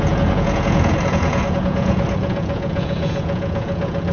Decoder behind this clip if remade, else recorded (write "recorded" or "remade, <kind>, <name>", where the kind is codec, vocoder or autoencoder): remade, vocoder, Vocos